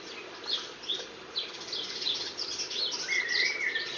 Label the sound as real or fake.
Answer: real